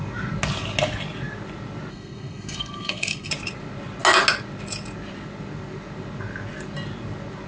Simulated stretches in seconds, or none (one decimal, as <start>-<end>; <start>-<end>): 1.9-3.3

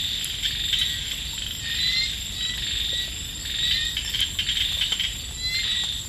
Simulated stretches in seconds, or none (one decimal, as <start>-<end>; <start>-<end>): none

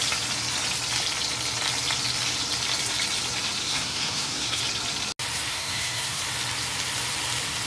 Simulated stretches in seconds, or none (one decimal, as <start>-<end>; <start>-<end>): 3.6-4.6; 5.5-6.2

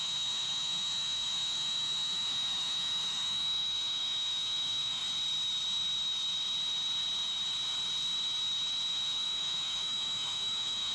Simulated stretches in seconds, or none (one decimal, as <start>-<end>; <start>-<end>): 0.0-5.0; 8.9-10.9

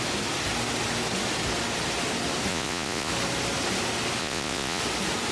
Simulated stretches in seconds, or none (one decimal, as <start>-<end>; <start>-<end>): 2.5-3.1; 4.2-4.8